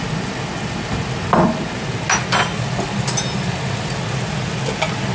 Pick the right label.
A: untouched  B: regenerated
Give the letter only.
A